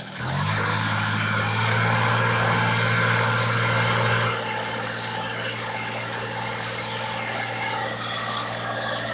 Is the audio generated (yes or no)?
yes